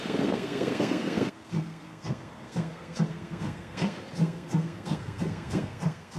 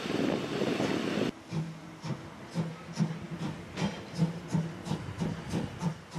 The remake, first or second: first